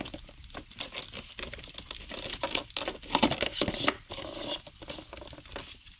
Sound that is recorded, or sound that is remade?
recorded